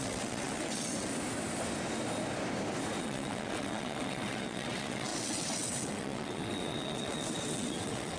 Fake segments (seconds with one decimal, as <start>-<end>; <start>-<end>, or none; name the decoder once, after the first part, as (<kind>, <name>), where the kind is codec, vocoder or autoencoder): 0.0-1.1 (vocoder, WaveNeXt); 3.0-8.2